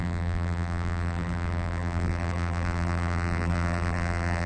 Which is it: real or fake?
fake